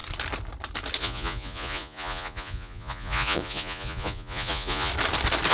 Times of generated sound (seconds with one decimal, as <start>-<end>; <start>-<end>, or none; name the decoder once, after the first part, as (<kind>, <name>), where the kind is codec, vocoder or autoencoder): 1.0-4.9 (vocoder, Vocos)